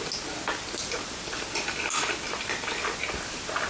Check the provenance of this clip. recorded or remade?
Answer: recorded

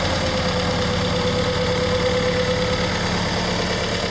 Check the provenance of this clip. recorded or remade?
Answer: recorded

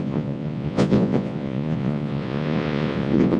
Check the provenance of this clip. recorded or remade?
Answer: remade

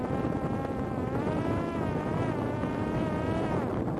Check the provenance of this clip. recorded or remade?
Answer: remade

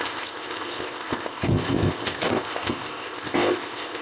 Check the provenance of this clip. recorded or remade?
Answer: remade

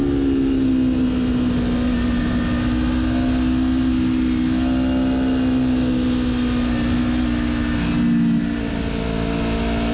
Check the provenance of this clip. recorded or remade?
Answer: recorded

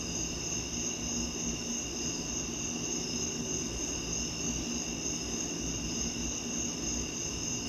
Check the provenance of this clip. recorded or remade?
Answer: recorded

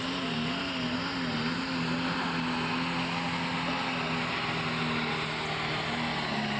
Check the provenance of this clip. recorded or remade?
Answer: recorded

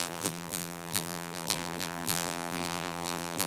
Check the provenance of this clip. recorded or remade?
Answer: remade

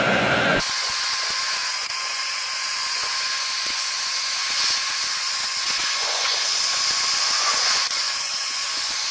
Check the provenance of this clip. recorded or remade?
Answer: remade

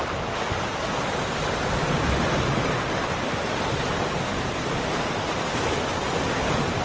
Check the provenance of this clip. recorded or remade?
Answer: recorded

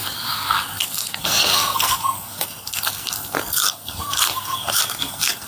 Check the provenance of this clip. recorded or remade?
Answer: remade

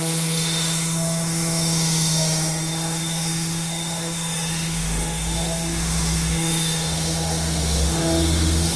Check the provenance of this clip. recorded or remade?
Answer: remade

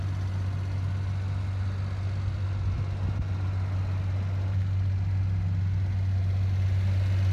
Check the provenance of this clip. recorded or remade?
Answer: recorded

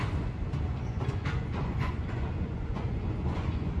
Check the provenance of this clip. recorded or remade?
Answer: remade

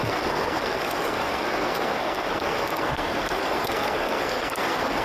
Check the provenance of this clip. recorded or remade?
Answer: remade